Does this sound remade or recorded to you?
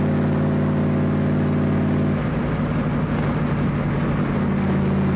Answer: recorded